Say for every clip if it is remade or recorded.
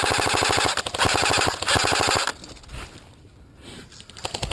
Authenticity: recorded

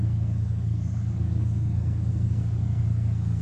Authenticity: remade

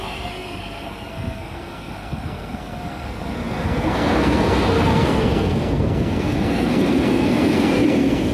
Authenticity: remade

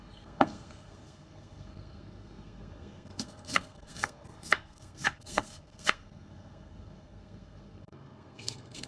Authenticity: remade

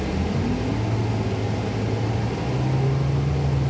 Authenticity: recorded